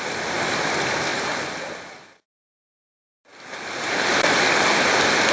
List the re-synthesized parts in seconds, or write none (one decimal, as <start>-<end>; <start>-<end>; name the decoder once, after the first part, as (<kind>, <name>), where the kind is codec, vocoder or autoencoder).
none